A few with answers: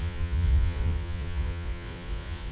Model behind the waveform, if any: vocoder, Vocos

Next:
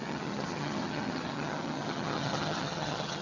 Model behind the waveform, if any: vocoder, HiFi-GAN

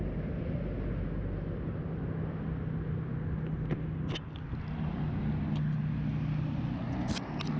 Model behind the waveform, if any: none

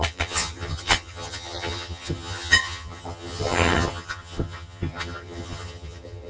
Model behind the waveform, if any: vocoder, HiFi-GAN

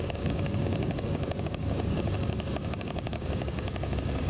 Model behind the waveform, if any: codec, DAC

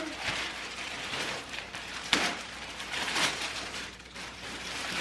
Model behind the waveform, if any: vocoder, BigVGAN v2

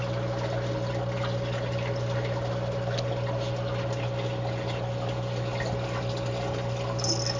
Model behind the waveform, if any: none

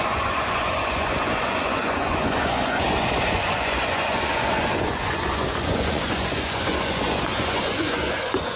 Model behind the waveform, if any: vocoder, Vocos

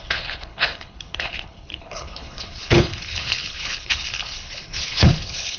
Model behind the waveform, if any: codec, HILCodec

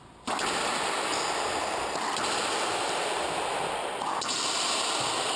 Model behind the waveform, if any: none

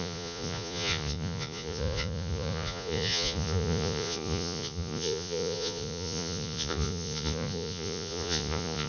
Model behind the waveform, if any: vocoder, Vocos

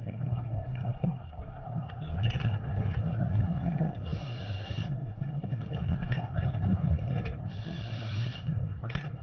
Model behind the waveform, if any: codec, SNAC